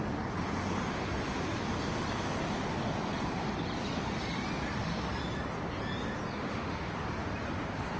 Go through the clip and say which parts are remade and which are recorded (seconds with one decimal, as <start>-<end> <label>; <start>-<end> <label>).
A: 0.0-6.4 recorded; 6.4-6.9 remade; 6.9-8.0 recorded